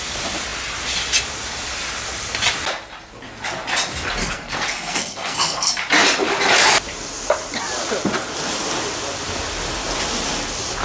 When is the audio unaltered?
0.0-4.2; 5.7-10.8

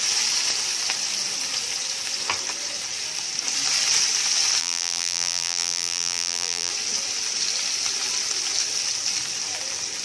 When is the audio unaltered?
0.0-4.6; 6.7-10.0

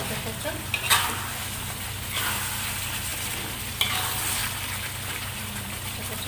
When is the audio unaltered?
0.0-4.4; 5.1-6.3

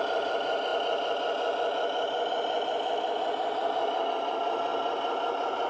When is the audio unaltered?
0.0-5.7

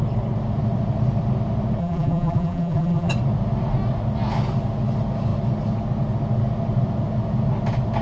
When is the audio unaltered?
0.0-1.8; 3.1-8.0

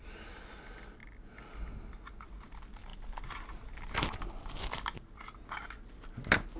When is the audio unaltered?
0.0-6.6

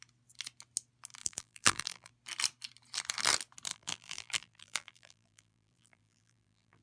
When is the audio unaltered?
0.0-1.2; 2.1-3.7

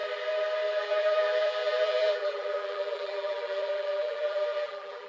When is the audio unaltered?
0.0-0.8